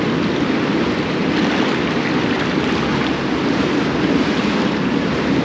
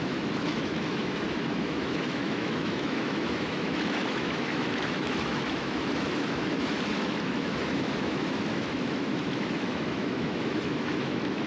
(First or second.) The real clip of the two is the first